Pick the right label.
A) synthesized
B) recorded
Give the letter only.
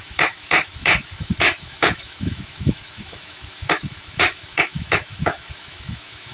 A